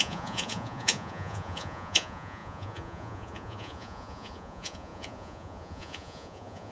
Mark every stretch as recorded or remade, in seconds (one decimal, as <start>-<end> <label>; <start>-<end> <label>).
0.0-6.7 remade